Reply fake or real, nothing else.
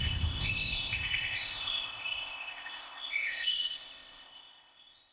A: fake